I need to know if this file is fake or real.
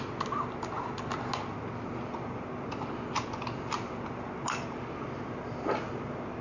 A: real